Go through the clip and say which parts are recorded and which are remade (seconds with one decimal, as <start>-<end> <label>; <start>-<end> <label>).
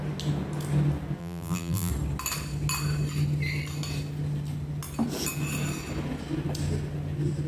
0.0-1.2 recorded; 1.2-1.9 remade; 1.9-7.5 recorded